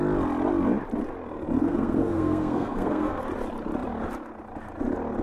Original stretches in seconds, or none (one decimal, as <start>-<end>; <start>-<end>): 0.0-1.6; 3.2-5.2